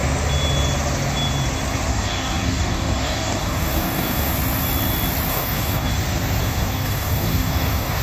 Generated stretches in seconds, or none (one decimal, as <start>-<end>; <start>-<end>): 1.9-4.3; 5.3-5.9; 6.4-8.0